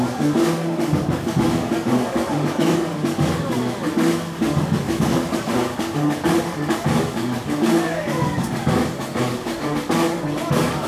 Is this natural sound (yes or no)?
no